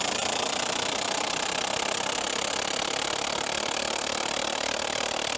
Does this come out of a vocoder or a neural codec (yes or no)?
no